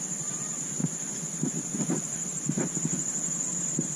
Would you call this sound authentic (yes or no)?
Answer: no